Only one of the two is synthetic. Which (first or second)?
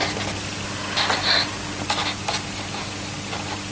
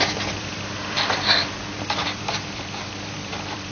second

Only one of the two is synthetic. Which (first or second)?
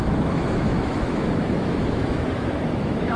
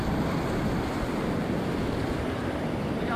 first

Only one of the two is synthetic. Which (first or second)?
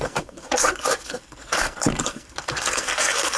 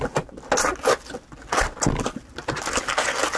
first